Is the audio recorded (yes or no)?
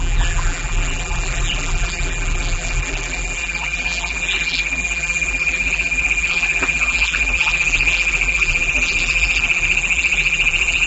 no